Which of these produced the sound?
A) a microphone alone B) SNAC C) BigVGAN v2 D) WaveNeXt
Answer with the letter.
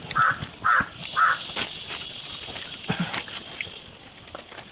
A